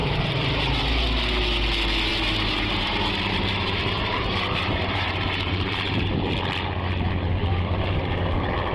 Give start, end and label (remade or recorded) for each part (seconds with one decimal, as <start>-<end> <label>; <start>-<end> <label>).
0.0-1.0 remade; 1.0-2.1 recorded; 2.1-6.1 remade; 6.1-7.4 recorded; 7.4-8.0 remade; 8.0-8.7 recorded